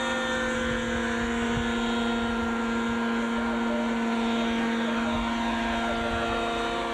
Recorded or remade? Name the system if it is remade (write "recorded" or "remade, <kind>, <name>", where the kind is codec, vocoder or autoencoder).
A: recorded